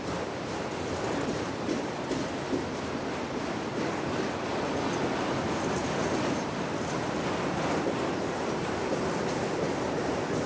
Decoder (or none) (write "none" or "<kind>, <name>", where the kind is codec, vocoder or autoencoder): none